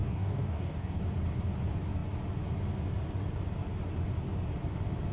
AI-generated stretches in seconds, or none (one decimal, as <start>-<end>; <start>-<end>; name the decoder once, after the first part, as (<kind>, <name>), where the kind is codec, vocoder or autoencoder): 0.0-1.0 (codec, DAC)